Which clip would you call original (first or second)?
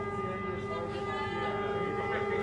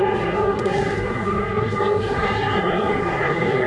first